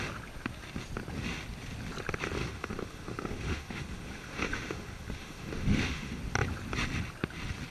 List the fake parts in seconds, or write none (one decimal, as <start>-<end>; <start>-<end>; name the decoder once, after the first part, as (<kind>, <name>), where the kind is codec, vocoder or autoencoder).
2.4-6.2 (autoencoder, DAC-VAE)